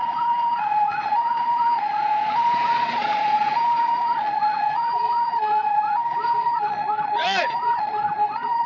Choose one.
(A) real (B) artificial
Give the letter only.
B